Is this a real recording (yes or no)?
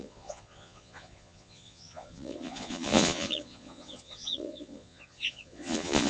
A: no